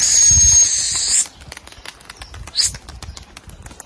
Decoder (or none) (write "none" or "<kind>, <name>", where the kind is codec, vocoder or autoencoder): none